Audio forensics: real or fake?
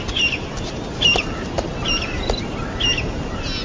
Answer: real